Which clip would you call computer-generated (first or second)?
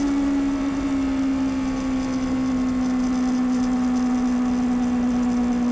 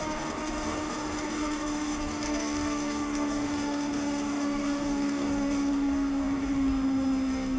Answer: second